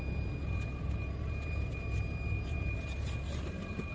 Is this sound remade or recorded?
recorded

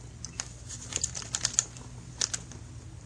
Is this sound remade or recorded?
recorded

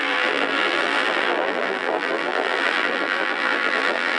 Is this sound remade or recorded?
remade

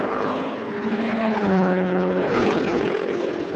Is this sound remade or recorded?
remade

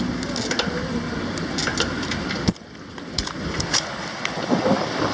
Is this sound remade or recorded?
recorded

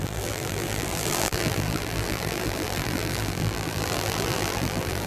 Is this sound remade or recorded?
remade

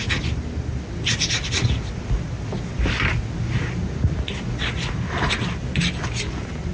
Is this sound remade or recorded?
recorded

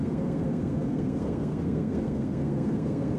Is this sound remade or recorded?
remade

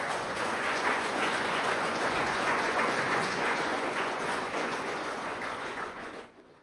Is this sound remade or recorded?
remade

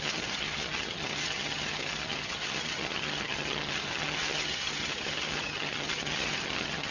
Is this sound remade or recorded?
remade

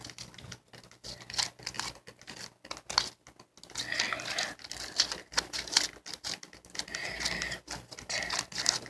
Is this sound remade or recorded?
recorded